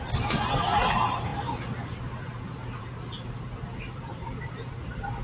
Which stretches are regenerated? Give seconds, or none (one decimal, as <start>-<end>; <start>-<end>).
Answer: 0.0-5.2